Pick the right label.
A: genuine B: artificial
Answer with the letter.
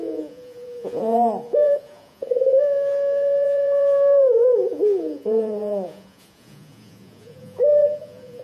B